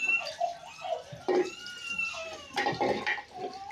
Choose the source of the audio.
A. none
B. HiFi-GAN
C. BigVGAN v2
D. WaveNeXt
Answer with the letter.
A